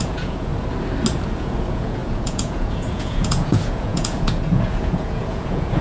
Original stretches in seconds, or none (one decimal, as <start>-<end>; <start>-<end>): 0.5-1.4